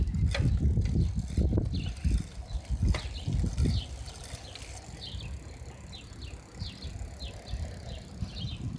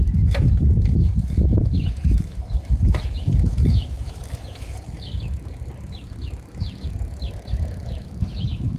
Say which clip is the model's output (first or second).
second